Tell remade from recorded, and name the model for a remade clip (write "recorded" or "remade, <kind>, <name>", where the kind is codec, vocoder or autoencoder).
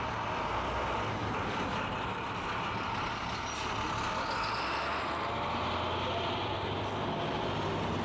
recorded